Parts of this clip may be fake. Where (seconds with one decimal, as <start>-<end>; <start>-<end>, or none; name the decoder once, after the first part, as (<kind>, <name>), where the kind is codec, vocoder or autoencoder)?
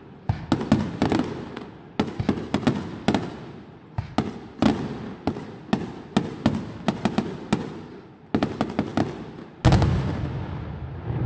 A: none